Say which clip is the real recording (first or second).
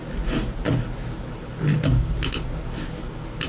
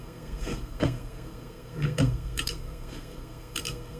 first